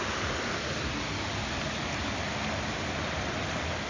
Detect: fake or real real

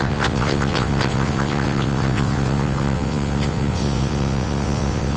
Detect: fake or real fake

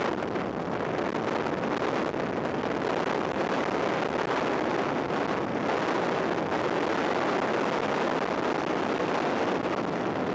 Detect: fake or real real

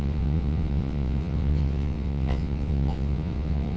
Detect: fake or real fake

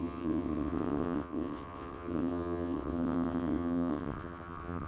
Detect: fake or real fake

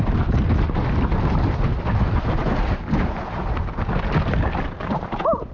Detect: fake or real real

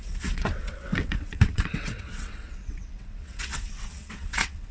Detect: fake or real fake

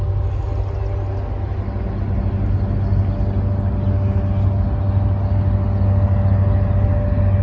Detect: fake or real real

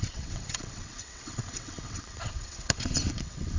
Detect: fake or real fake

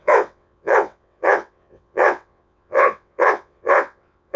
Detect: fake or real fake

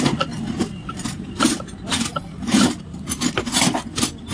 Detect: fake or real real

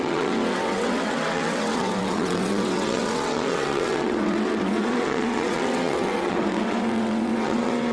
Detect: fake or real fake